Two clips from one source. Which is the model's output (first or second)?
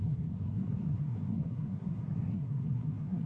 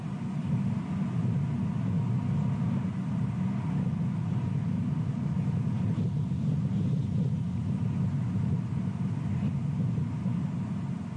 first